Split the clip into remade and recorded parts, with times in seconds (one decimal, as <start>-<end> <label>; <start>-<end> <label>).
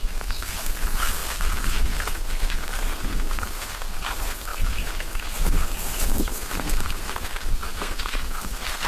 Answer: 0.0-8.9 remade